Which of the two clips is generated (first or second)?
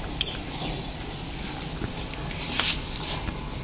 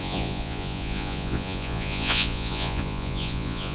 second